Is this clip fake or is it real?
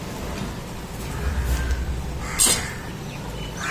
real